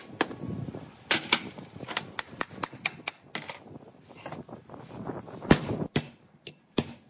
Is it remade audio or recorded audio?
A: recorded